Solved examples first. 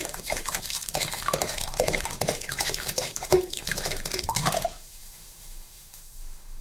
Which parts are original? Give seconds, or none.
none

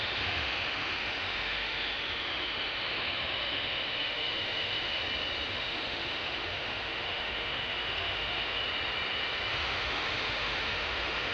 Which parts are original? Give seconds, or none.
5.0-5.5; 8.6-9.5

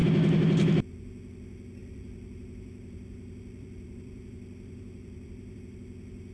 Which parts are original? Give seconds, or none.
0.0-1.8; 5.6-6.3

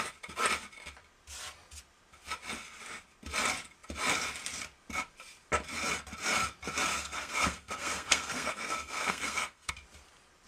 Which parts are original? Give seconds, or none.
0.0-6.9; 9.7-10.5

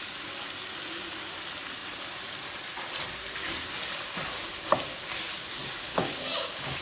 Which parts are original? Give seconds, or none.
0.0-5.9

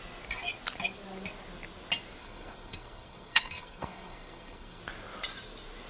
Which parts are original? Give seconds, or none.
0.0-2.2; 4.8-5.9